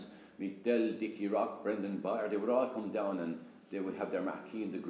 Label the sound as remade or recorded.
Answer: recorded